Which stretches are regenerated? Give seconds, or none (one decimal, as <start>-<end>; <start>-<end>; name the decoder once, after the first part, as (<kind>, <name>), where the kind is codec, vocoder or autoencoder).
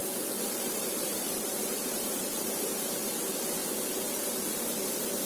0.0-3.6 (vocoder, BigVGAN v2)